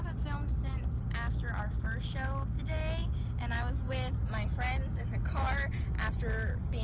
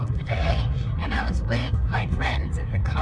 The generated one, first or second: second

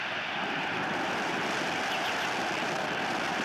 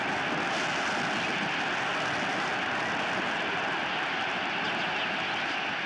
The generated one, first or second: first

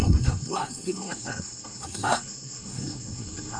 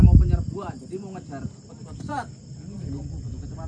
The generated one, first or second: first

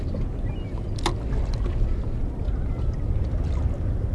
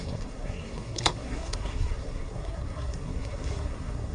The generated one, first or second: second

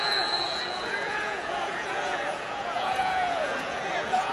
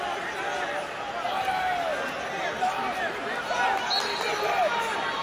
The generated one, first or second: first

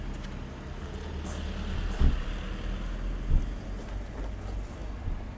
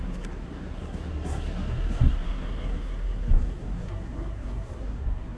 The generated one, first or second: second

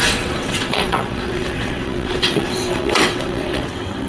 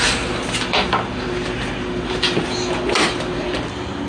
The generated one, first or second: first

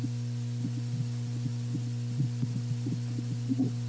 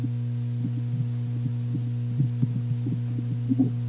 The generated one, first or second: first